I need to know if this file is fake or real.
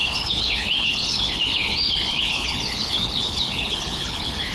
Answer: fake